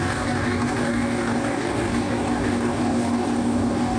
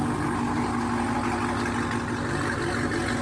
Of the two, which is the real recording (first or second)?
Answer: second